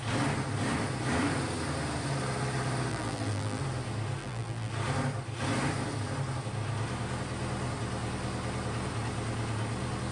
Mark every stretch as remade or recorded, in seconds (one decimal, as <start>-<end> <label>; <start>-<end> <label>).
0.0-2.9 recorded; 2.9-3.6 remade; 3.6-4.2 recorded; 4.2-4.7 remade; 4.7-10.1 recorded